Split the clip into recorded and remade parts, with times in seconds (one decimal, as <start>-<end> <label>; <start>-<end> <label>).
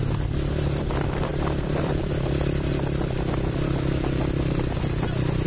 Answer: 0.0-1.3 recorded; 1.3-2.7 remade; 2.7-5.5 recorded